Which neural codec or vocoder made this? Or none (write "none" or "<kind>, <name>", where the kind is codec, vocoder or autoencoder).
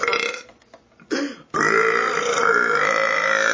none